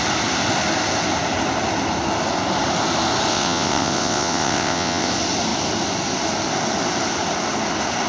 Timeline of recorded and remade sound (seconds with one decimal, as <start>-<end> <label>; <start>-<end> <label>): 0.0-3.3 recorded; 3.3-5.1 remade; 5.1-8.1 recorded